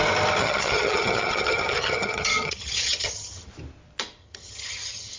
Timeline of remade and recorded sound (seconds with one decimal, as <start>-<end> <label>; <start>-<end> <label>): 0.0-0.4 recorded; 0.4-3.5 remade; 3.5-4.2 recorded; 4.2-5.2 remade